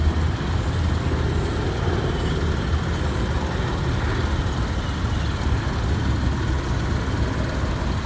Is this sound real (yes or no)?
yes